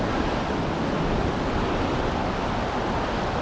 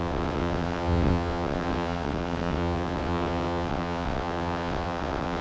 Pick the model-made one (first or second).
second